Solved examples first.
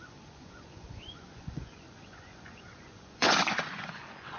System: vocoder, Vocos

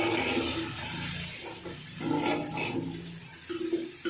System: none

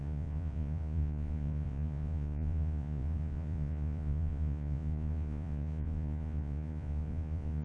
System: vocoder, Vocos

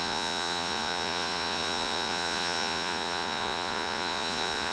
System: vocoder, Vocos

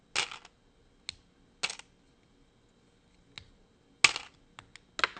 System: none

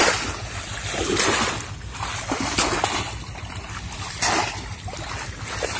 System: none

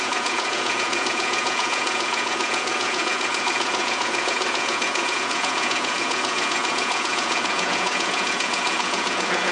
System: vocoder, Vocos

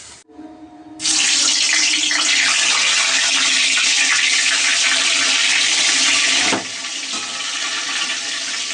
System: none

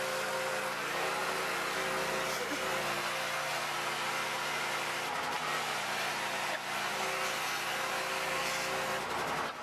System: none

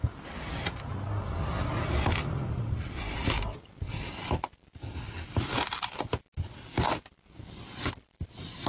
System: none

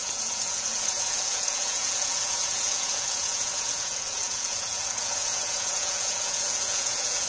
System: vocoder, Vocos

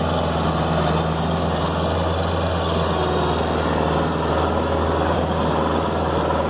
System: none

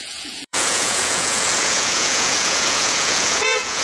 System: vocoder, Vocos